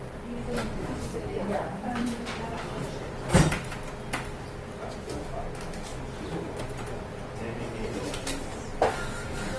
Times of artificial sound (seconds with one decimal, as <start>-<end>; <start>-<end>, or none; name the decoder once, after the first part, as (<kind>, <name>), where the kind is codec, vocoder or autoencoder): 1.1-2.4 (vocoder, BigVGAN v2)